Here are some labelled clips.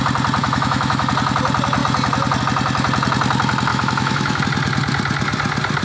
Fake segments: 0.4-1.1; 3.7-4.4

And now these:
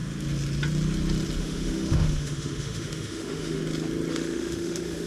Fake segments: 1.4-3.6; 4.1-5.1

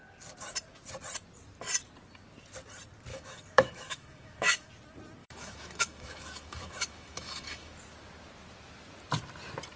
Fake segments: 3.1-4.7; 5.2-7.7

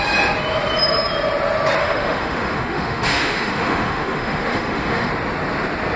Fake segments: 1.8-5.1